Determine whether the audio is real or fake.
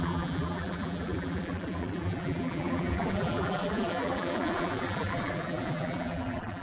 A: fake